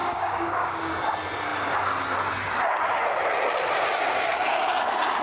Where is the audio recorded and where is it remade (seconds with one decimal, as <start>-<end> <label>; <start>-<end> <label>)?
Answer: 0.0-1.0 remade; 1.0-5.2 recorded